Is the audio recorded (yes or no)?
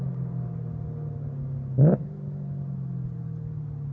yes